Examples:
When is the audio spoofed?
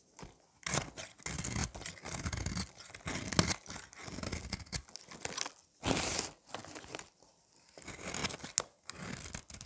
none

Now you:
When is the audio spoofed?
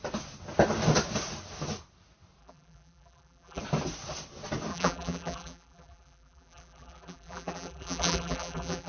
2.4-3.6 (vocoder, BigVGAN v2); 4.7-8.9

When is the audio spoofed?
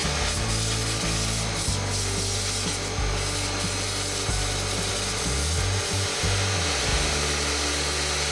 none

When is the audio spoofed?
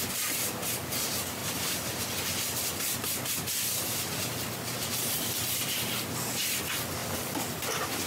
1.4-2.0 (vocoder, BigVGAN v2)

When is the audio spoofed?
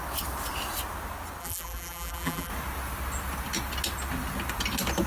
1.4-2.5 (vocoder, BigVGAN v2)